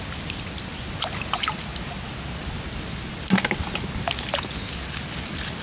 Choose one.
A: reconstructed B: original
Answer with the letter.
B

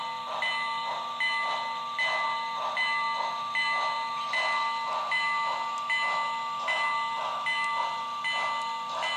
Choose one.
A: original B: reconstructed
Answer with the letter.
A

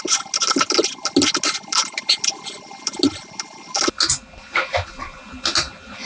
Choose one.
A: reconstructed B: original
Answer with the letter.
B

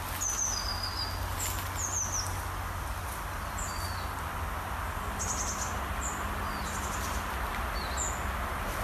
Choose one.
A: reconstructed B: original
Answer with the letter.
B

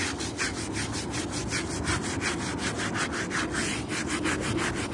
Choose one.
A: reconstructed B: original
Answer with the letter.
B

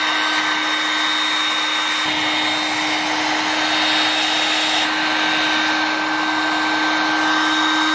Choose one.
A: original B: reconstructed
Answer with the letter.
A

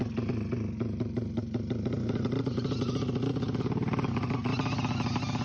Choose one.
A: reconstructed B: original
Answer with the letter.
B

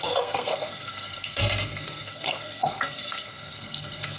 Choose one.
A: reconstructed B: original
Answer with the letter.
A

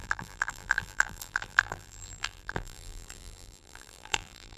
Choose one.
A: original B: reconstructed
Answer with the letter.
B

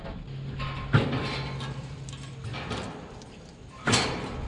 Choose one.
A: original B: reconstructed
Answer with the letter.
A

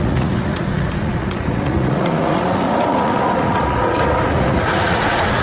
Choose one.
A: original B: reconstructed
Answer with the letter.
B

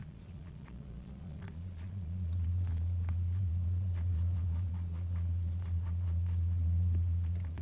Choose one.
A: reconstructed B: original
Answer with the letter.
A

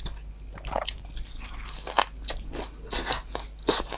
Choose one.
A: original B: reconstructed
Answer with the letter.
A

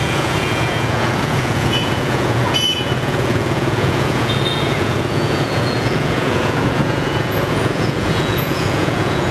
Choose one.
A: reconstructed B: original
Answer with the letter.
A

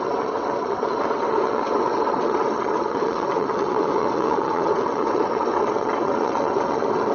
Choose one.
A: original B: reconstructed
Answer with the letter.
B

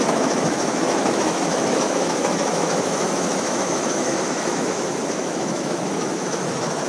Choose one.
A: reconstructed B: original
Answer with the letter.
A